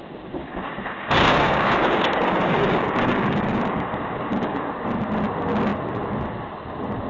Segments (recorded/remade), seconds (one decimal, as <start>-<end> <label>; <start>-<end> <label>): 0.0-0.4 recorded; 0.4-4.7 remade; 4.7-7.1 recorded